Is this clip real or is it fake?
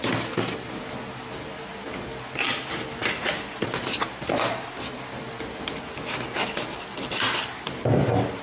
real